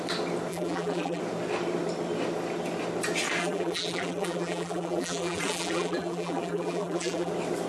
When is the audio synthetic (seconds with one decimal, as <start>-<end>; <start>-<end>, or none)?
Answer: 0.5-1.2; 3.4-7.3